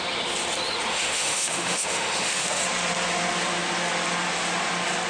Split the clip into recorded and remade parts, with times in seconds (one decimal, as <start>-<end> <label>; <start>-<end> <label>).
0.0-0.9 recorded; 0.9-2.6 remade; 2.6-5.1 recorded